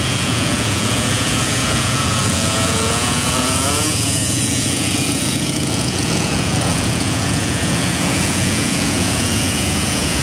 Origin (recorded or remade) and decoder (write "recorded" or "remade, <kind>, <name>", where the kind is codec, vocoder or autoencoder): remade, vocoder, Vocos